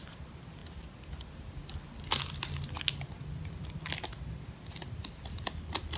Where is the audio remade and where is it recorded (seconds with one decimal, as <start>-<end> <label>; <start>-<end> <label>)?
0.0-6.0 recorded